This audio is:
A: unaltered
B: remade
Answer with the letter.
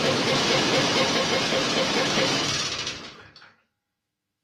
B